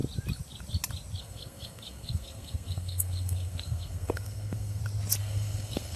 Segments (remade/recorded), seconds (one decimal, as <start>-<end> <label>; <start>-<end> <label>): 0.0-1.2 recorded; 1.2-4.8 remade; 4.8-5.2 recorded; 5.2-6.0 remade